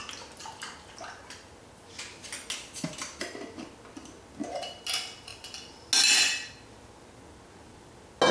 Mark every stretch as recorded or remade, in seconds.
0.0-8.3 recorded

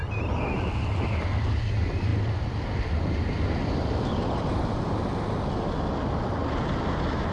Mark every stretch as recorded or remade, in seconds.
0.0-7.3 recorded